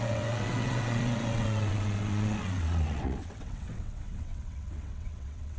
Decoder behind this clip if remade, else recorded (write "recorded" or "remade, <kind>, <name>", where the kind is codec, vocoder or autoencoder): remade, vocoder, WaveNeXt